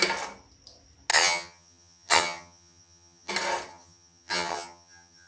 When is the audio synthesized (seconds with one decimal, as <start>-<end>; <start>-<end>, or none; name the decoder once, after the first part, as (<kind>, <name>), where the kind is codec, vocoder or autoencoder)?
1.1-3.3 (vocoder, HiFi-GAN); 3.7-5.3